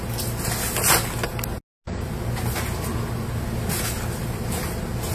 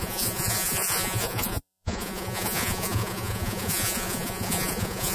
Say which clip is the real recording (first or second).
first